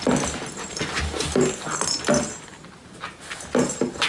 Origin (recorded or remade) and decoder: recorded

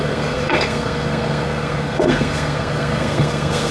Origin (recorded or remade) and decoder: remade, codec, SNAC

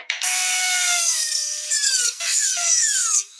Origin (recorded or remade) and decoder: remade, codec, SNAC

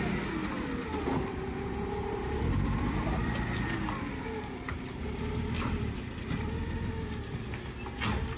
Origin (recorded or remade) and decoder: recorded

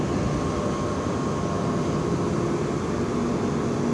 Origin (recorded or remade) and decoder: recorded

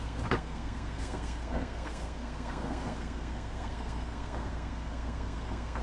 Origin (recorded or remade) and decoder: remade, codec, SNAC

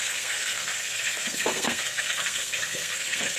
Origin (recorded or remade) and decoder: remade, codec, SNAC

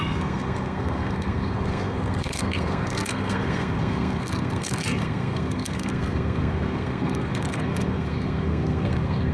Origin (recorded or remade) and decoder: remade, codec, SNAC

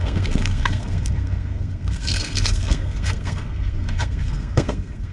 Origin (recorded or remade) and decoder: remade, codec, SNAC